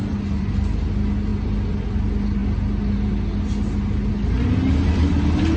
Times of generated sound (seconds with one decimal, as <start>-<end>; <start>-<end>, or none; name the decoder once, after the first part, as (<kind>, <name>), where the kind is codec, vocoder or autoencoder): none